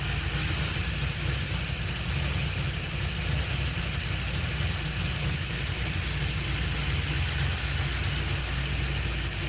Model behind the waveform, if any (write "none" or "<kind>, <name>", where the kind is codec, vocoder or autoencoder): none